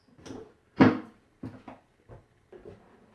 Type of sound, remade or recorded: recorded